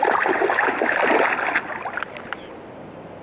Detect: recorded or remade recorded